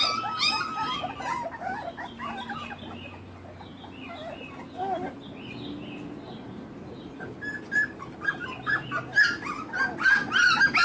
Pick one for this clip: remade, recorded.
recorded